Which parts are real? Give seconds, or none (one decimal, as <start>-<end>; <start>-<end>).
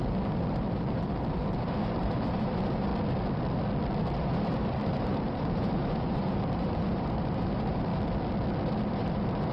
2.9-4.0; 7.9-8.8